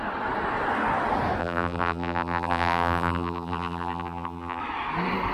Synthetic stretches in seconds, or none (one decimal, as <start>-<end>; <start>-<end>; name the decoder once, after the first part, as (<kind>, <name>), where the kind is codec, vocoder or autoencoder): 1.4-4.6 (vocoder, BigVGAN v2)